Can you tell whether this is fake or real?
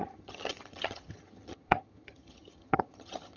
fake